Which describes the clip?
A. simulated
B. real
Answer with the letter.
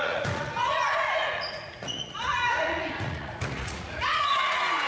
A